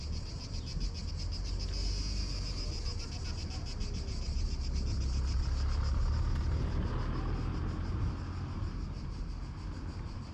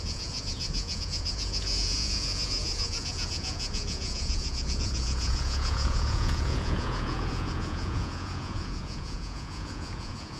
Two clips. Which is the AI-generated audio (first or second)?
second